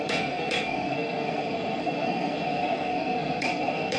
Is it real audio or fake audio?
fake